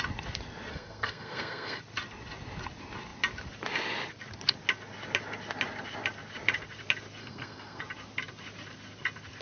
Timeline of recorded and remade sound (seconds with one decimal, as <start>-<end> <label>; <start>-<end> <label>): 0.0-0.7 recorded; 0.7-1.8 remade; 1.8-7.2 recorded; 7.2-7.8 remade; 7.8-9.4 recorded

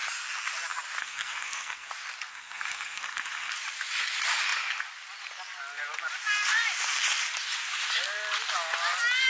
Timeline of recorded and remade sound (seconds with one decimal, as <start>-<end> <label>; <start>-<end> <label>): 0.0-1.0 recorded; 1.0-1.9 remade; 1.9-2.3 recorded; 2.3-3.5 remade; 3.5-9.3 recorded

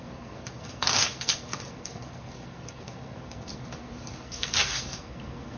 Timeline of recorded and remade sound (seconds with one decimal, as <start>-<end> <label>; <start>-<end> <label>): 0.0-5.6 remade